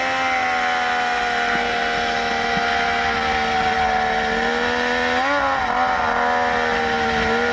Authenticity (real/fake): real